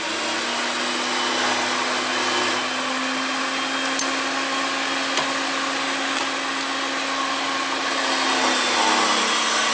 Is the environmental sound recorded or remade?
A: recorded